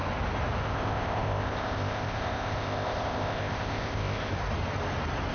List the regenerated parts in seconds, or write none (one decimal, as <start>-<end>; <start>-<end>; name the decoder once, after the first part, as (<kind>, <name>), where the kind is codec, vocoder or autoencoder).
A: 0.6-4.3 (codec, ZipCodec)

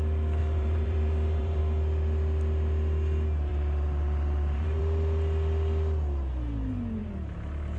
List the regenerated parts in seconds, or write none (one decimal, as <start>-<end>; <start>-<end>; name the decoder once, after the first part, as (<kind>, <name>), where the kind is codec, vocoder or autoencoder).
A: 0.4-1.6 (vocoder, BigVGAN v2); 3.5-4.8

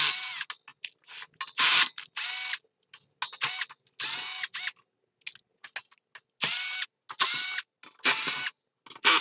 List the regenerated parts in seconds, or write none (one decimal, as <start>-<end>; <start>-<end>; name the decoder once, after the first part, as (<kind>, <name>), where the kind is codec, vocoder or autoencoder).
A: none

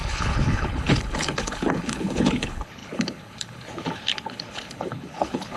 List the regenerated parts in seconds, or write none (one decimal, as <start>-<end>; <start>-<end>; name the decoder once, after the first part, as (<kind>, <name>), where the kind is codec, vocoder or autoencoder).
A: 0.0-5.6 (codec, HILCodec)

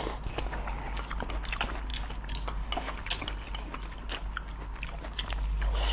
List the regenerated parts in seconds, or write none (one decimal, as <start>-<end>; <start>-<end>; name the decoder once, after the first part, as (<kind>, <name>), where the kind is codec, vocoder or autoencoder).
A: none

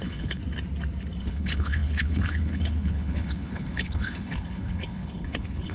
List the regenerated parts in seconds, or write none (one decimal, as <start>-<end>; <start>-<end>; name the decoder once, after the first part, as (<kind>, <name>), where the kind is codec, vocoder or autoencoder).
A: 0.0-0.4 (codec, HILCodec); 1.2-5.7

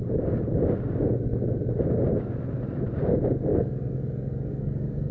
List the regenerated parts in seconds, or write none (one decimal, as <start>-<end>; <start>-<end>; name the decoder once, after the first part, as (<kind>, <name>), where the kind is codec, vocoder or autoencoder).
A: 3.5-5.1 (codec, DAC)